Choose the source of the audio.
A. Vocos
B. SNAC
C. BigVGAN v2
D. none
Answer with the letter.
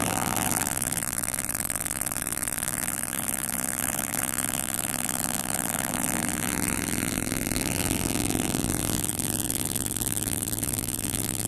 C